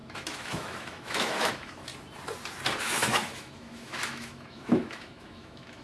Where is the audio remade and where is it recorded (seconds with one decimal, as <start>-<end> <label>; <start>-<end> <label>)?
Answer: 0.0-1.9 remade; 1.9-2.8 recorded; 2.8-5.8 remade